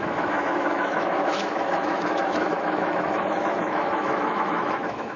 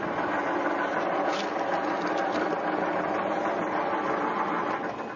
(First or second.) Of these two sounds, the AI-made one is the first